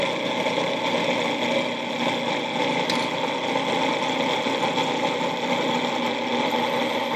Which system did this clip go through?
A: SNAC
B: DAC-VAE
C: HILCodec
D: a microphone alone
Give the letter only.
D